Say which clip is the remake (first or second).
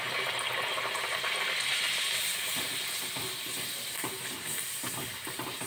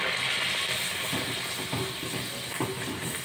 first